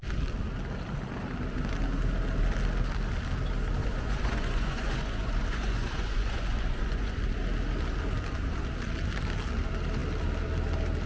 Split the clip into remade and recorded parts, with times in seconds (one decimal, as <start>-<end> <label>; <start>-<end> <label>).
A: 0.0-3.8 recorded; 3.8-7.2 remade; 7.2-11.1 recorded